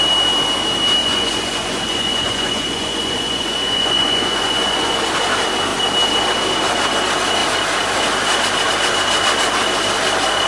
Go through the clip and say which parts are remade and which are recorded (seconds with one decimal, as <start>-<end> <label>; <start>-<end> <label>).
0.0-1.0 recorded; 1.0-5.0 remade; 5.0-10.5 recorded

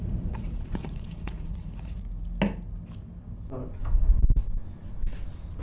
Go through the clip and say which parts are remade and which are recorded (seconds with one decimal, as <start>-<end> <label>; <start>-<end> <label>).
0.0-2.0 remade; 2.0-3.8 recorded; 3.8-4.4 remade; 4.4-5.6 recorded

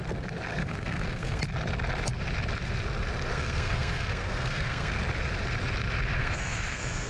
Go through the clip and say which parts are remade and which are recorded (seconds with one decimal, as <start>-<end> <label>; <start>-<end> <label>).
0.0-0.5 recorded; 0.5-1.4 remade; 1.4-3.3 recorded; 3.3-5.0 remade; 5.0-6.2 recorded; 6.2-7.1 remade

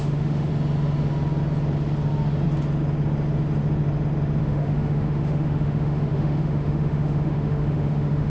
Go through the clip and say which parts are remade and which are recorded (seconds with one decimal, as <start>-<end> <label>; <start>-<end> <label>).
0.0-0.5 remade; 0.5-4.4 recorded; 4.4-8.3 remade

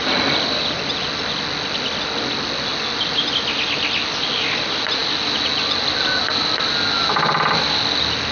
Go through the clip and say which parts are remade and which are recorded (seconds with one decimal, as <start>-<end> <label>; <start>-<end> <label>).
0.0-8.3 recorded